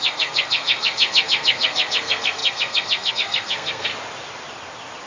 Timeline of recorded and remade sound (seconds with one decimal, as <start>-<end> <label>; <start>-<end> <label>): 0.0-3.9 remade; 3.9-5.1 recorded